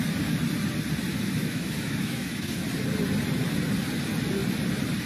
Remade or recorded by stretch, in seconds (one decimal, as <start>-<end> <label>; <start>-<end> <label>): 0.0-1.1 recorded; 1.1-2.6 remade; 2.6-5.1 recorded

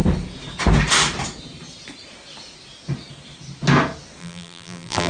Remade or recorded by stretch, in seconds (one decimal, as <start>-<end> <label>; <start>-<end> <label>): 0.0-4.2 recorded; 4.2-5.1 remade

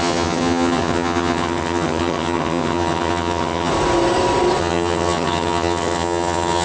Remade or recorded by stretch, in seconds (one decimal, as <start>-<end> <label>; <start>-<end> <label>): 0.0-3.7 remade; 3.7-4.6 recorded; 4.6-6.6 remade

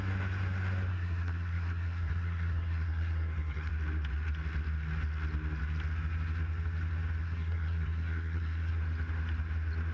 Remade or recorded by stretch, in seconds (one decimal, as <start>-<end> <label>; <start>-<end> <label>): 0.0-0.9 recorded; 0.9-3.7 remade; 3.7-7.2 recorded; 7.2-8.7 remade; 8.7-9.9 recorded

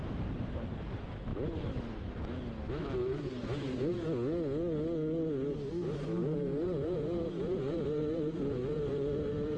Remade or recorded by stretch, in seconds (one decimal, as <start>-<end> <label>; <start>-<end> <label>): 0.0-1.3 remade; 1.3-2.7 recorded; 2.7-3.9 remade; 3.9-5.7 recorded; 5.7-9.6 remade

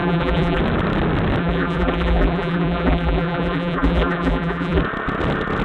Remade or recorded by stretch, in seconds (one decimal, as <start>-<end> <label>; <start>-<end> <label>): 0.0-0.6 remade; 0.6-1.4 recorded; 1.4-4.8 remade; 4.8-5.6 recorded